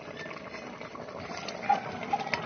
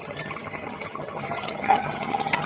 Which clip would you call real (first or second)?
first